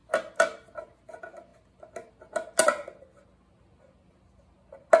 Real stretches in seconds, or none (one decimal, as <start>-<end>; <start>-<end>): 0.0-5.0